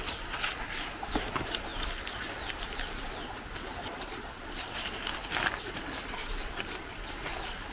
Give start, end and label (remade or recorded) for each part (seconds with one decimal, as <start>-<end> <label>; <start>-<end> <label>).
0.0-7.7 recorded